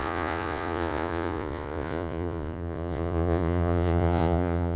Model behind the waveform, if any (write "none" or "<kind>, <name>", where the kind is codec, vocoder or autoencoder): vocoder, Vocos